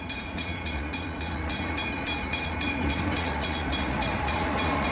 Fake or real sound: fake